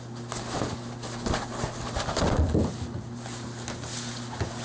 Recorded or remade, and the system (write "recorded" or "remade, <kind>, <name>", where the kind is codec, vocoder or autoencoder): recorded